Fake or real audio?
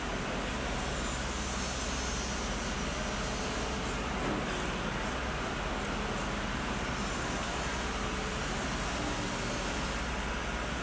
real